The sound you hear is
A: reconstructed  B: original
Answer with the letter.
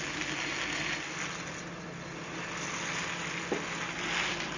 B